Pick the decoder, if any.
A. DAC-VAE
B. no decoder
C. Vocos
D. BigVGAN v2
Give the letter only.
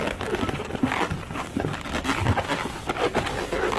B